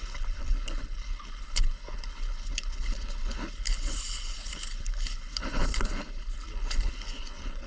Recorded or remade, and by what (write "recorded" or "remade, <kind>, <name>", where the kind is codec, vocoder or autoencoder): remade, codec, HILCodec